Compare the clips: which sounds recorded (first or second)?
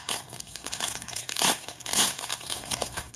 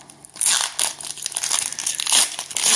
second